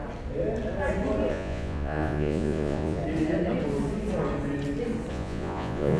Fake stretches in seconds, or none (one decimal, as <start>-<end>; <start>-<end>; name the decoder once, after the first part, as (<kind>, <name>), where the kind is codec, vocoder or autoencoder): 1.3-3.0 (vocoder, Vocos); 5.1-6.0